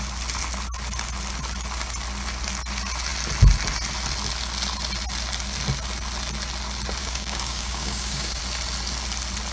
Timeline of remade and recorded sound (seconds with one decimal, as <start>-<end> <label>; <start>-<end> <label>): 0.0-7.0 recorded; 7.0-8.4 remade; 8.4-9.5 recorded